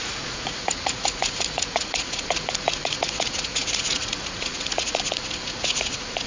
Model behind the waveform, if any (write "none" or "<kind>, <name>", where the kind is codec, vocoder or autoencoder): vocoder, Vocos